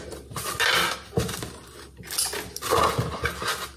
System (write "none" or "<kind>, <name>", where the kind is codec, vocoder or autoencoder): none